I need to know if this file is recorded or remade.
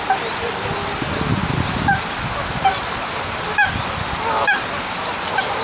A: recorded